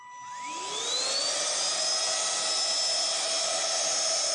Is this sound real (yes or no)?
yes